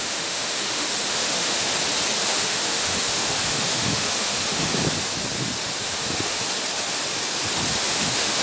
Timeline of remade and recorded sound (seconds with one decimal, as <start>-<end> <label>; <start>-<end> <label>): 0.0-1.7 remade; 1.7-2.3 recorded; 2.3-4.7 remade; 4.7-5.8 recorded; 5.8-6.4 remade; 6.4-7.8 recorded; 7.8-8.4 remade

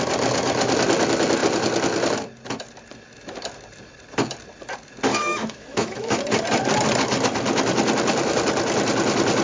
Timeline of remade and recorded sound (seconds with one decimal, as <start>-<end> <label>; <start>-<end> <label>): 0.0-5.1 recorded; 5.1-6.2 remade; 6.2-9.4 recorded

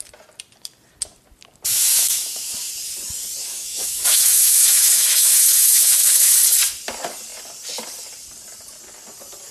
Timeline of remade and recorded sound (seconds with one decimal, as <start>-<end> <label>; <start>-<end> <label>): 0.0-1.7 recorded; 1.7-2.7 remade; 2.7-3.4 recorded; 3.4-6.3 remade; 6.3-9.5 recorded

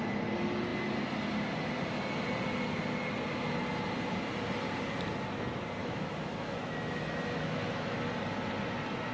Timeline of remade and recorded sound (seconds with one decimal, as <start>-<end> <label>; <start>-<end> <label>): 0.0-5.8 recorded; 5.8-8.0 remade; 8.0-9.1 recorded

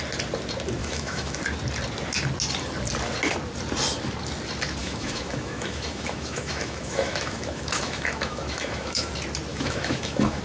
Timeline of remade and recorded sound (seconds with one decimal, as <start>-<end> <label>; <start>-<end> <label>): 0.0-0.8 recorded; 0.8-1.4 remade; 1.4-4.8 recorded; 4.8-9.1 remade; 9.1-9.5 recorded; 9.5-10.4 remade